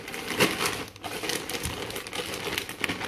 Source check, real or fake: real